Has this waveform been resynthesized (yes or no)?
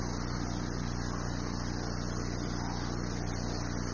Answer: no